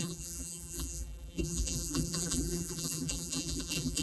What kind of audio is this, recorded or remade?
remade